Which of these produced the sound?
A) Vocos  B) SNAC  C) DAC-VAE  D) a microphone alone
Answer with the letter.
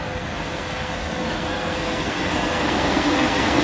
B